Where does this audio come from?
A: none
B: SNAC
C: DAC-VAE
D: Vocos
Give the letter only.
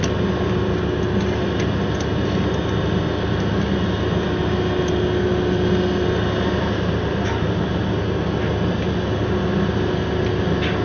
A